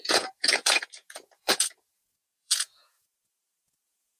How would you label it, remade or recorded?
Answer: remade